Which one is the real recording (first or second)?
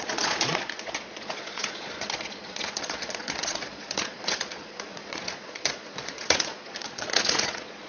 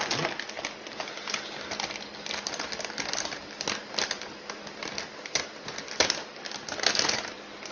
second